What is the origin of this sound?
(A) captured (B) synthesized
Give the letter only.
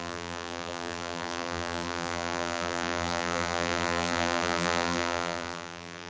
B